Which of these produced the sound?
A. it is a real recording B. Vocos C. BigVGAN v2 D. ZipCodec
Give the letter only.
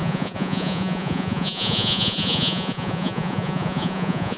B